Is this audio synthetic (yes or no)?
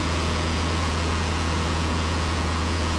yes